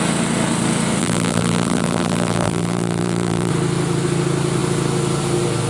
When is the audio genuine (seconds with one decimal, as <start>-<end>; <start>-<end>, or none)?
0.0-1.0; 3.5-5.7